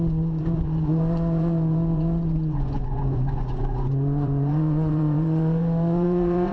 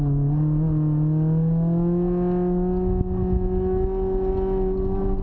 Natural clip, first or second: second